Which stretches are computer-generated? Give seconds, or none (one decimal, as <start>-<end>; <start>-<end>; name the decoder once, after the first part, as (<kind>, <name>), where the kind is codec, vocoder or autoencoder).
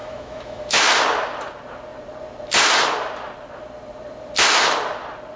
0.0-0.8 (autoencoder, DAC-VAE)